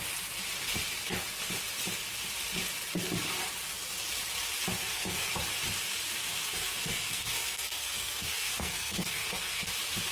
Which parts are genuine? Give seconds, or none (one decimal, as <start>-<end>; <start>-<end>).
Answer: 0.0-4.8; 5.3-6.2; 9.7-10.1